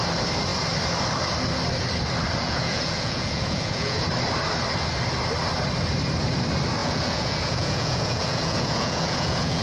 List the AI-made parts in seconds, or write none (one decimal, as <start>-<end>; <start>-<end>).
2.4-4.1; 6.8-9.6